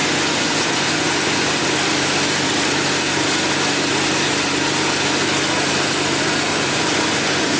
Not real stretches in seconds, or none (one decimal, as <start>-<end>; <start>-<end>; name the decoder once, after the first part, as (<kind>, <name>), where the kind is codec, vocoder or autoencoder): 0.0-1.6 (vocoder, Vocos); 6.2-7.6